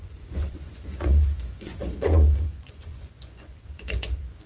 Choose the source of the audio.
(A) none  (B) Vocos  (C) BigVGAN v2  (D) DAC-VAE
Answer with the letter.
B